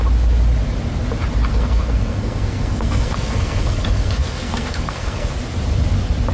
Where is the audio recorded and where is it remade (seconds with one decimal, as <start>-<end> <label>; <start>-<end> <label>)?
0.0-1.5 recorded; 1.5-5.3 remade; 5.3-6.3 recorded